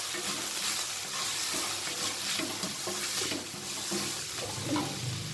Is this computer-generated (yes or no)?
no